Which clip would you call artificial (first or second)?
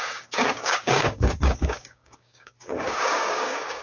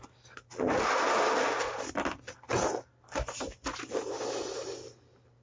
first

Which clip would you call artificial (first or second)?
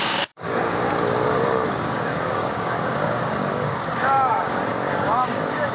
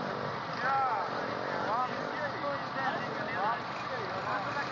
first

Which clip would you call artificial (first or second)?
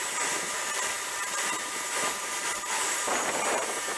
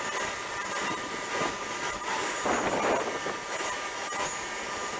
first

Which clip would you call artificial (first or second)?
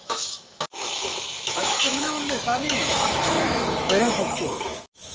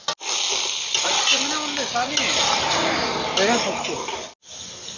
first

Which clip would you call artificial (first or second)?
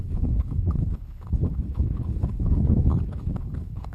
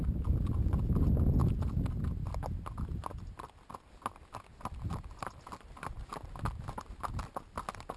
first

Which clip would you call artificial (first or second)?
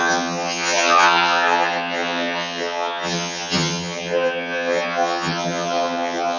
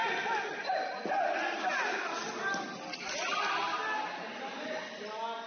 first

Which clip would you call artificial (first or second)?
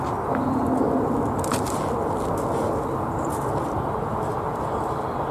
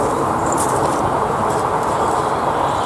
second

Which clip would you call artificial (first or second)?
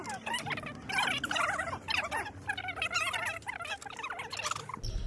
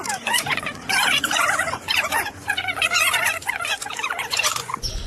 second